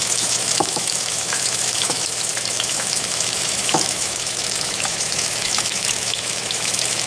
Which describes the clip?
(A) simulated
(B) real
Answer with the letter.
A